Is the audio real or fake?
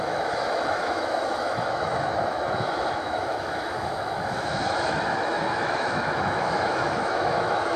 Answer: fake